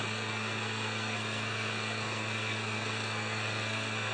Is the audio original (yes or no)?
no